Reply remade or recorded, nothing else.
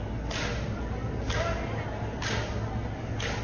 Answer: recorded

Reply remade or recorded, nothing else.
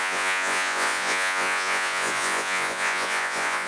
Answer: remade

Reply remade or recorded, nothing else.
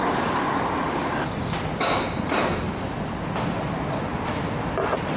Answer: recorded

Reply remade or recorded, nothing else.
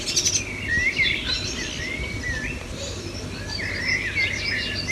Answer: recorded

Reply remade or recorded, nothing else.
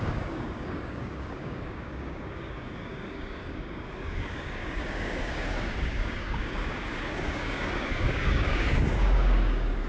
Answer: remade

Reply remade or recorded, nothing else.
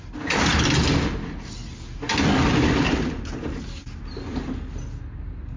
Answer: recorded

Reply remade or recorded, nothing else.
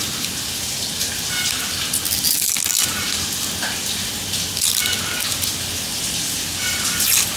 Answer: recorded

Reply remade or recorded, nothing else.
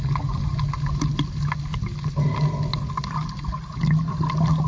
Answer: recorded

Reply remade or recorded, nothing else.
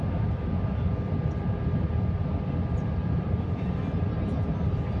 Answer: recorded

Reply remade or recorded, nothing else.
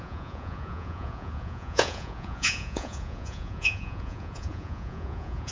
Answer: remade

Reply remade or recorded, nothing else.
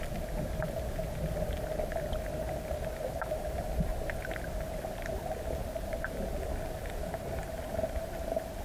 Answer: recorded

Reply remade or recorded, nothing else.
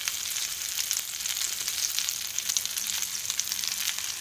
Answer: remade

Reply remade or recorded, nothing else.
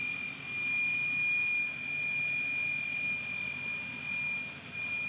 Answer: recorded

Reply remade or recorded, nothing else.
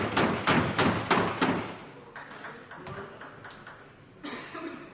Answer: recorded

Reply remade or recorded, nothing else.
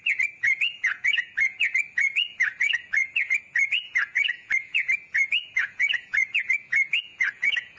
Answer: remade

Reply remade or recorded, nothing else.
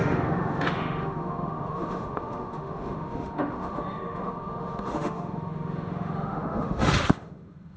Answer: remade